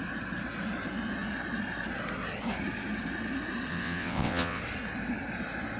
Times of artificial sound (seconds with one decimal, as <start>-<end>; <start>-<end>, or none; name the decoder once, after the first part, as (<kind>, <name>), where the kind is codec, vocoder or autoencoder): 3.7-4.6 (vocoder, WaveNeXt)